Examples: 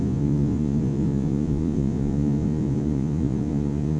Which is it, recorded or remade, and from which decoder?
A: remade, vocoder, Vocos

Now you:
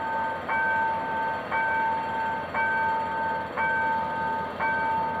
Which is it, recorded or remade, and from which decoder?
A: recorded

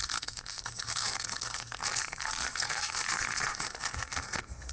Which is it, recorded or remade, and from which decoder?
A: remade, codec, SNAC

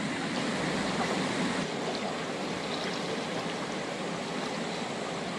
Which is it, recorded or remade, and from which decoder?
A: recorded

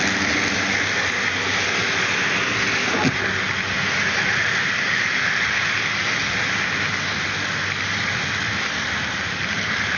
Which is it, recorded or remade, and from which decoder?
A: recorded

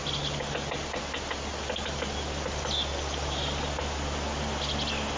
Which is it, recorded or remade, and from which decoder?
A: recorded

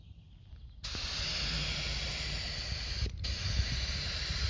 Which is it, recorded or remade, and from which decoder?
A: recorded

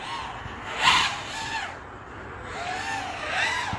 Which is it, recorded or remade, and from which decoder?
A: recorded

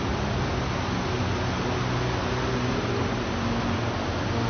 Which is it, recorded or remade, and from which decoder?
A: recorded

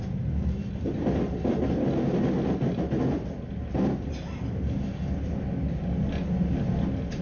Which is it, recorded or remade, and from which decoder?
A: recorded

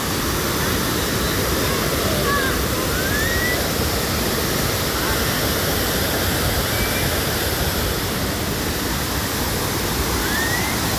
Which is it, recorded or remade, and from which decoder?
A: recorded